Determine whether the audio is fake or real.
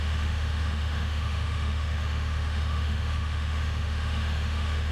fake